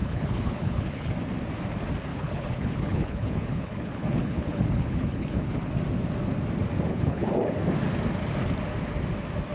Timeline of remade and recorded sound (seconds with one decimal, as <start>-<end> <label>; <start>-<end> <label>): 0.0-1.1 remade; 1.1-2.1 recorded; 2.1-5.7 remade; 5.7-6.9 recorded; 6.9-7.6 remade; 7.6-9.5 recorded